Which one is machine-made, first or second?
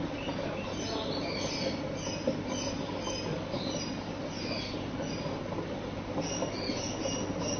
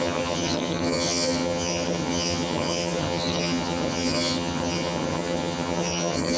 second